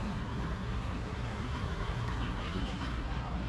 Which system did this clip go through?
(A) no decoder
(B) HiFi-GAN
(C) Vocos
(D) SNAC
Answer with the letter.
D